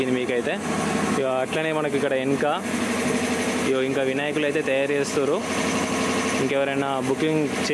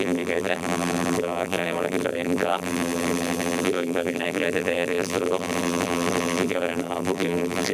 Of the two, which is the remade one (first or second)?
second